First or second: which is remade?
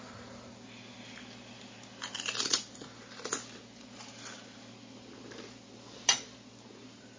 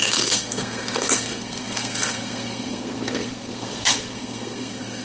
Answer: second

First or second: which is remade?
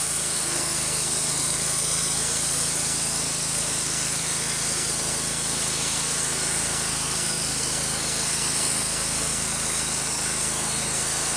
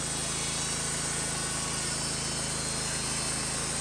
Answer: first